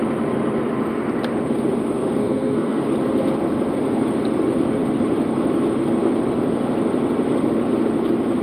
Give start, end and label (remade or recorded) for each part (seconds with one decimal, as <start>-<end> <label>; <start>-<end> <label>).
0.0-2.2 recorded; 2.2-2.8 remade; 2.8-8.4 recorded

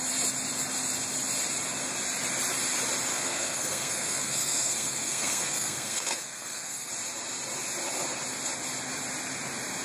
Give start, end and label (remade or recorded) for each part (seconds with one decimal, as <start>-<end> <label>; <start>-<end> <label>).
0.0-3.1 recorded; 3.1-6.9 remade; 6.9-9.8 recorded

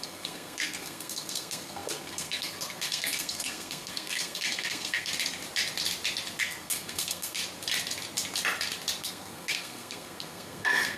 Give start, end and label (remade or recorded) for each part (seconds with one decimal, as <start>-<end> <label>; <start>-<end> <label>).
0.0-5.1 remade; 5.1-6.4 recorded; 6.4-7.4 remade; 7.4-9.0 recorded; 9.0-11.0 remade